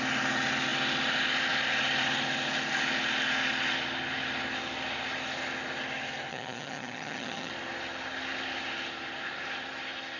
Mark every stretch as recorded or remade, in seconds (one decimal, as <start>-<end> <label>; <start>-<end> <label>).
0.0-6.3 recorded; 6.3-7.5 remade; 7.5-10.2 recorded